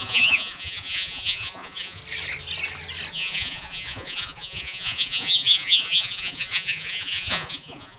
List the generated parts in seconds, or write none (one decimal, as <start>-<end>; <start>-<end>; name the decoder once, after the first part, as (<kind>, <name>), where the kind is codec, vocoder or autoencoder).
0.0-2.0 (vocoder, Vocos); 3.1-8.0